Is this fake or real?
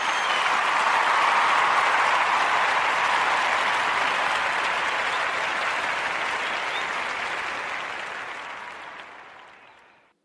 real